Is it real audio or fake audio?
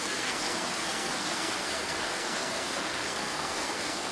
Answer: fake